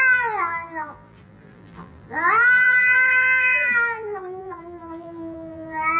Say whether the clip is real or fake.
fake